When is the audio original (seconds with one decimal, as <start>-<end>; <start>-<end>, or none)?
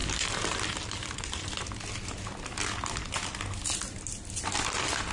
1.5-5.1